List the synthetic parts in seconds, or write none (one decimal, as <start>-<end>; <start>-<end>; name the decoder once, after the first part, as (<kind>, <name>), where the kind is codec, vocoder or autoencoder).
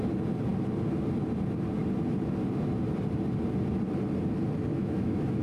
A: 4.7-5.4 (autoencoder, DAC-VAE)